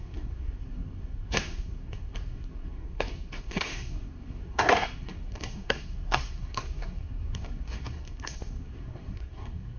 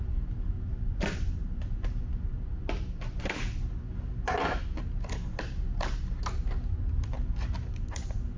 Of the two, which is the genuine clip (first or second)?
second